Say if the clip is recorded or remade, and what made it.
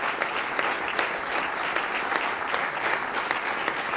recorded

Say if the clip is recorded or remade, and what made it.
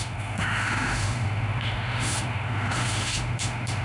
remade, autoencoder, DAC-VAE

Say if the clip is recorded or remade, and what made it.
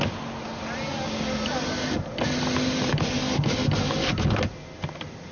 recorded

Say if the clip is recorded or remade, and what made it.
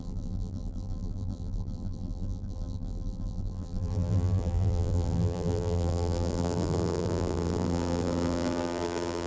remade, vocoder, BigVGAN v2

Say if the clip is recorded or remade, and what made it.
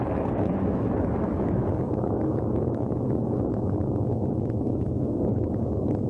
remade, codec, DAC